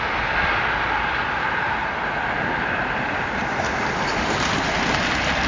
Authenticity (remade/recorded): recorded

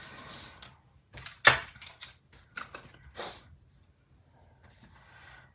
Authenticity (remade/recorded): recorded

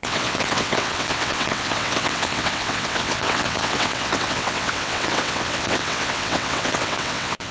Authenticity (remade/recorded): remade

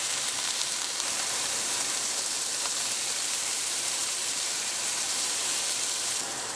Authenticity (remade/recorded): remade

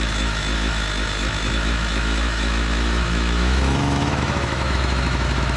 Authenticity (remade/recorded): remade